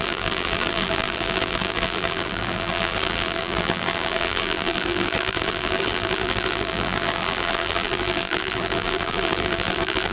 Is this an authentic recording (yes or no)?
no